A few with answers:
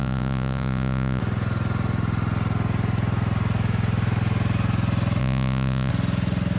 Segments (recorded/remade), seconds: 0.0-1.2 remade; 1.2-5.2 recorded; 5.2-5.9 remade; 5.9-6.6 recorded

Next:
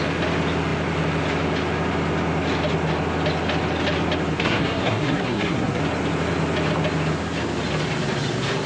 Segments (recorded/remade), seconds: 0.0-4.3 recorded; 4.3-5.8 remade; 5.8-8.7 recorded

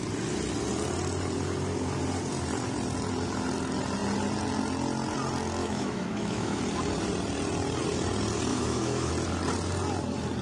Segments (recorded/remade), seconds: 0.0-5.6 recorded; 5.6-6.6 remade; 6.6-8.5 recorded; 8.5-9.1 remade; 9.1-10.4 recorded

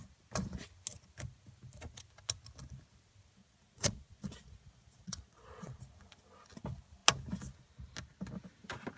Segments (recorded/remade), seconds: 0.0-3.4 recorded; 3.4-5.8 remade; 5.8-9.0 recorded

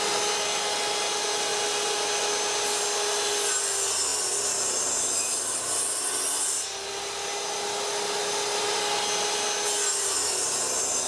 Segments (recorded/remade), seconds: 0.0-11.1 recorded

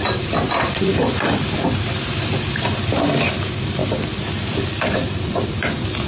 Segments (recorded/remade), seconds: 0.0-3.8 remade; 3.8-6.1 recorded